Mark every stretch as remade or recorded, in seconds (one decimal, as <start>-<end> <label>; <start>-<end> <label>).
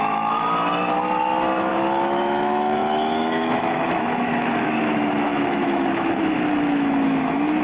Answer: 0.0-0.4 remade; 0.4-1.7 recorded; 1.7-7.6 remade